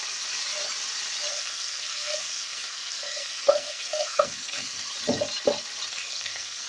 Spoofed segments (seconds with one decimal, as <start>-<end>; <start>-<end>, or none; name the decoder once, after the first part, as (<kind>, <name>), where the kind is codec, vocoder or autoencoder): 1.3-4.9 (codec, SNAC); 5.9-6.7